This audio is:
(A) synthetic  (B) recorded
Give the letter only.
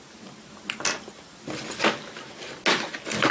B